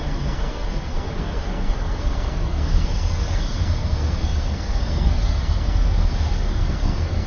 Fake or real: fake